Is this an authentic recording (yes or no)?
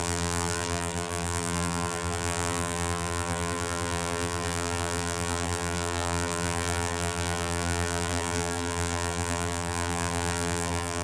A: no